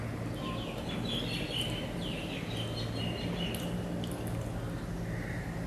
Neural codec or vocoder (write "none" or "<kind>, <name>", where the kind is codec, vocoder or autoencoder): none